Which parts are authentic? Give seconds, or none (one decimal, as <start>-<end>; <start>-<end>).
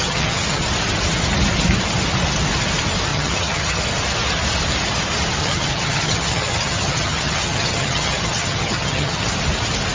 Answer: 0.6-3.1; 3.8-5.4; 9.3-9.9